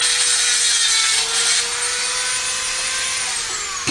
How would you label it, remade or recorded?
recorded